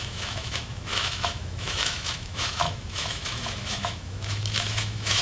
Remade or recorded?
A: remade